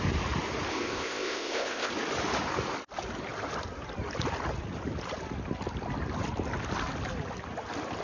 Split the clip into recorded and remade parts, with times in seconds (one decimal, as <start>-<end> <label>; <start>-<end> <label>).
0.0-0.7 recorded; 0.7-1.9 remade; 1.9-8.0 recorded